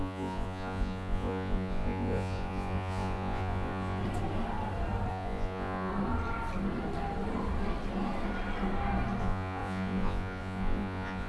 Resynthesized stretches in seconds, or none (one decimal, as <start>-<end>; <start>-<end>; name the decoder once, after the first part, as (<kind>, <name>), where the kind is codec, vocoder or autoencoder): 0.0-4.0 (vocoder, Vocos); 5.1-5.9; 9.2-11.3